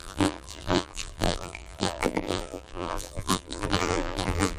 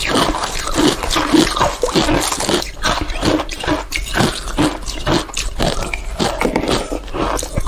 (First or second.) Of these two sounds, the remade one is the first